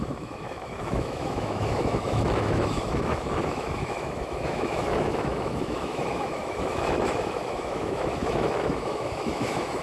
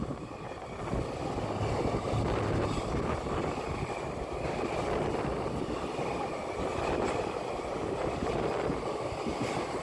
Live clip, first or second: second